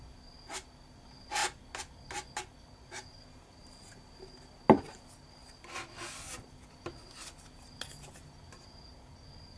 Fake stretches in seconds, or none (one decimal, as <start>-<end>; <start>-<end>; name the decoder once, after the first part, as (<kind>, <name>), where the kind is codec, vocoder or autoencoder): none